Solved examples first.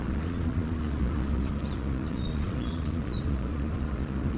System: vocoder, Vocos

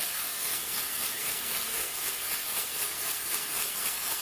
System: codec, SNAC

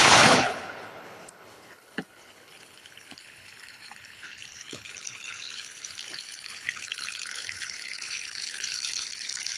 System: codec, HILCodec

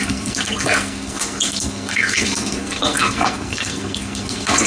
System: codec, SNAC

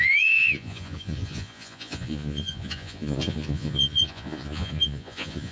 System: vocoder, Vocos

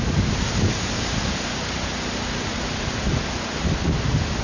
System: none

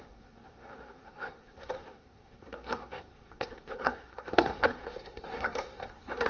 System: codec, SNAC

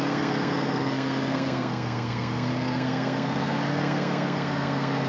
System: codec, SNAC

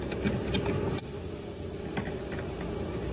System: none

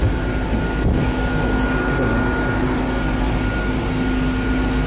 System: none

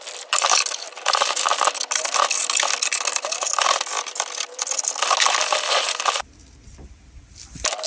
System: none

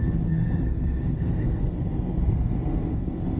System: codec, SNAC